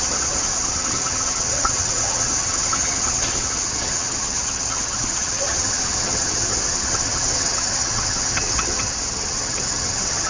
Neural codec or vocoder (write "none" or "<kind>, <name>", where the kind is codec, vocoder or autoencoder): vocoder, HiFi-GAN